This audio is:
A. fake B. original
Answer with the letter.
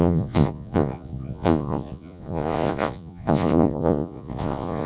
A